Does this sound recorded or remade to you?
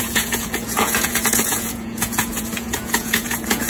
remade